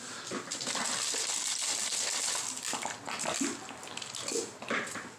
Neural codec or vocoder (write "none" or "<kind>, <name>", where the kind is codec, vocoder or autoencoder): none